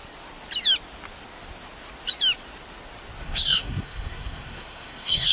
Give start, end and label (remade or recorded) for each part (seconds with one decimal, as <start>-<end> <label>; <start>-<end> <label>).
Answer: 0.0-3.2 recorded; 3.2-5.3 remade